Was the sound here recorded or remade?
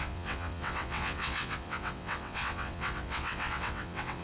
remade